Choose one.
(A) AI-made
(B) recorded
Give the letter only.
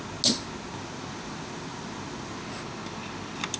B